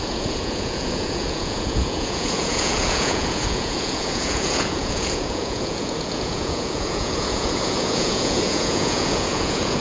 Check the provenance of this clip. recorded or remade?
remade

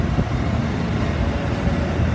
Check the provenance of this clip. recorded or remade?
recorded